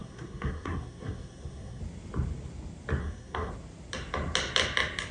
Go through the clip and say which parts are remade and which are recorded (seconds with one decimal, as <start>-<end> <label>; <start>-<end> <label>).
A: 0.0-1.8 remade; 1.8-3.0 recorded; 3.0-3.5 remade; 3.5-5.1 recorded